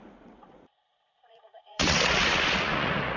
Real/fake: fake